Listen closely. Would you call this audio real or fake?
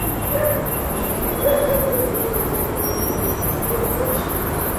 real